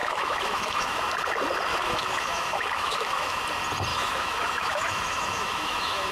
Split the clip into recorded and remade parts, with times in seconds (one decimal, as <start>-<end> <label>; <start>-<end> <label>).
0.0-1.0 remade; 1.0-1.7 recorded; 1.7-3.4 remade; 3.4-3.9 recorded; 3.9-6.1 remade